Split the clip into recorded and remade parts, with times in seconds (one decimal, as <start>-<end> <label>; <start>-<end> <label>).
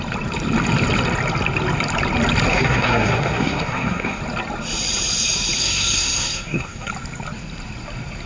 0.0-2.5 recorded; 2.5-4.2 remade; 4.2-5.6 recorded; 5.6-6.9 remade; 6.9-8.3 recorded